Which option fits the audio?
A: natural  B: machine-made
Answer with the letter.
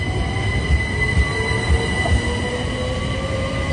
A